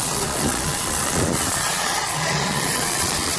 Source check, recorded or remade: remade